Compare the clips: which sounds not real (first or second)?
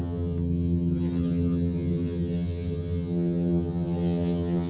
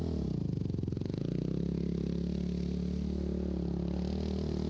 first